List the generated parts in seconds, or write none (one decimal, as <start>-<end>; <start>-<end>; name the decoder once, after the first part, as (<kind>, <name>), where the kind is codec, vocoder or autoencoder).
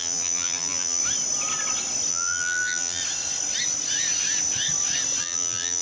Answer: 0.0-1.0 (vocoder, BigVGAN v2); 2.1-3.0; 5.2-5.8